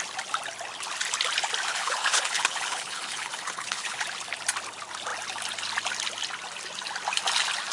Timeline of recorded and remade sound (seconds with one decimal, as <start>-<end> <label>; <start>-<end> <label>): 0.0-1.7 recorded; 1.7-4.0 remade; 4.0-7.7 recorded